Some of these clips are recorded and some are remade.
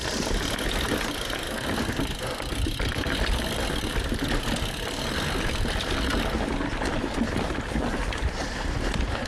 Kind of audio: recorded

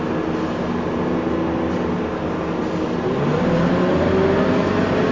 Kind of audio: recorded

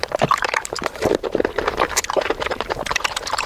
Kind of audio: remade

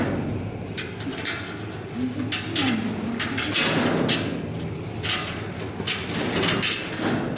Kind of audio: recorded